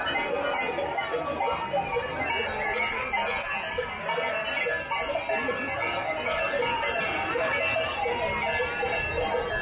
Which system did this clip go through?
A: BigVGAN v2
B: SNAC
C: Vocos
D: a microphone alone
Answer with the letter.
D